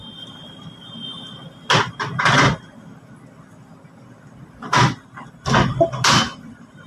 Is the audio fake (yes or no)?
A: no